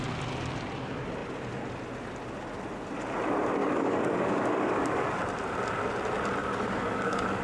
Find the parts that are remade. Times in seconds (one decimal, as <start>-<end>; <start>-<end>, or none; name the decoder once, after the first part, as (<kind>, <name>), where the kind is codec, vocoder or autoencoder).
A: 3.6-5.1 (codec, DAC); 6.4-7.4